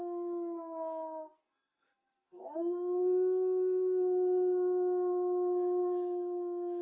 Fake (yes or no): yes